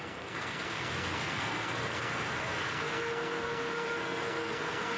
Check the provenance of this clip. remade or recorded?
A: remade